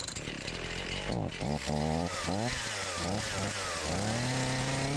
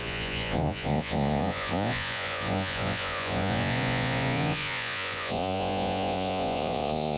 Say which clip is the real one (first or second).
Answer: first